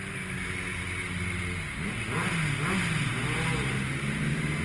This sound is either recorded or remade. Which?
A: recorded